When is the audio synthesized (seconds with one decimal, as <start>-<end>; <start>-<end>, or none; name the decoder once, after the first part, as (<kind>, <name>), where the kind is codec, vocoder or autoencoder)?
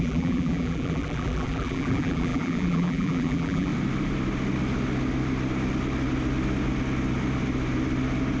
0.0-3.7 (vocoder, BigVGAN v2)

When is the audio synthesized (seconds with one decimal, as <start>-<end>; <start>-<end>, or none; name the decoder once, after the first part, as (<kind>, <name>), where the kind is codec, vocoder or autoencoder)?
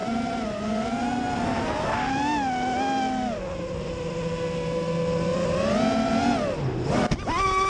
none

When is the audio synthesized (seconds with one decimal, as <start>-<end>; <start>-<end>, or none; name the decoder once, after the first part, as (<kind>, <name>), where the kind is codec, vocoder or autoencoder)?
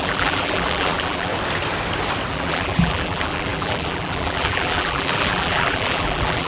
0.0-1.3 (vocoder, BigVGAN v2); 2.3-6.5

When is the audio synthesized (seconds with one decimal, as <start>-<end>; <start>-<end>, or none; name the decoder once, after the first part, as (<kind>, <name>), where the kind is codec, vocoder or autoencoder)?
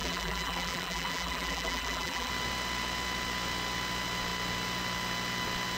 0.0-2.3 (vocoder, BigVGAN v2)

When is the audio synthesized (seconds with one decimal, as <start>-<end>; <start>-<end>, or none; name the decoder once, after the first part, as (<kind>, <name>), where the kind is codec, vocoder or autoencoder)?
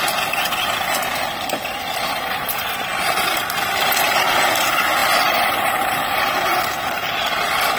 none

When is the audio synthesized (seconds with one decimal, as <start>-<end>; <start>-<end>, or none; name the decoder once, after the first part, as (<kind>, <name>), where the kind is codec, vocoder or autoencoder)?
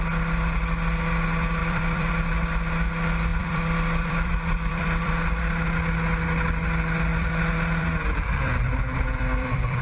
1.6-2.1 (vocoder, BigVGAN v2); 3.3-5.1; 7.1-9.8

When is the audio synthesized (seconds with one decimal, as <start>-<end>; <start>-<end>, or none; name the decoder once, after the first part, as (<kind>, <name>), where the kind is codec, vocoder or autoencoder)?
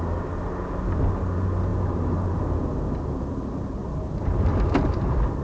1.7-2.4 (vocoder, BigVGAN v2); 3.8-4.7